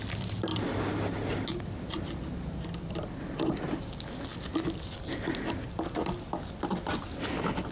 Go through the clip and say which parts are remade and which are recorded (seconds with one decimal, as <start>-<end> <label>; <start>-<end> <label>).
0.0-7.7 recorded

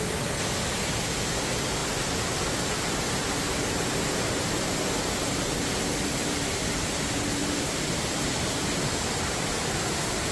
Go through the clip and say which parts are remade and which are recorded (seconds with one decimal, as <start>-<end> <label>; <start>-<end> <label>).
0.0-7.4 recorded; 7.4-9.6 remade; 9.6-10.3 recorded

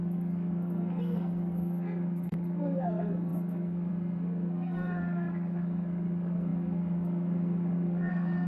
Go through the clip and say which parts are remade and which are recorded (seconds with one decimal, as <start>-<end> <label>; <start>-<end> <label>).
0.0-8.5 remade